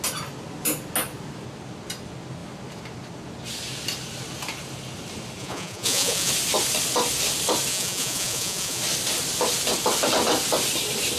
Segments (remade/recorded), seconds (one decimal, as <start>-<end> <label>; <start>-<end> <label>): 0.0-5.4 recorded; 5.4-6.3 remade; 6.3-7.7 recorded; 7.7-8.8 remade; 8.8-11.2 recorded